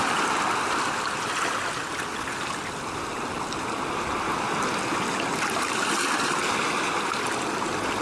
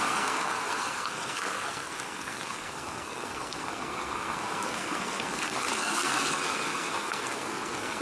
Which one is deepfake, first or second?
second